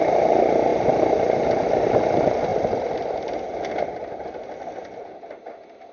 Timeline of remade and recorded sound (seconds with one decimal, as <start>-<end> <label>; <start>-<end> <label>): 0.0-5.9 recorded